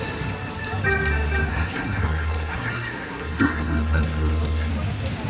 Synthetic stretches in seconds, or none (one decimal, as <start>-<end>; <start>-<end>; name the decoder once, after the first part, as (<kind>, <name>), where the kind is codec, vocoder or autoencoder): 1.5-4.7 (codec, SNAC)